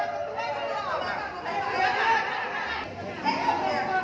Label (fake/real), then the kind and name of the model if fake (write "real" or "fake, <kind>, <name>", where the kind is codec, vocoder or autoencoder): real